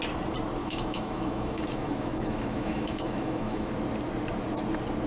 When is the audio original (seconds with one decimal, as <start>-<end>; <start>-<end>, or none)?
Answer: 0.0-0.6; 3.7-5.1